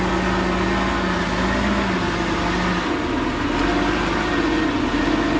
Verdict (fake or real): real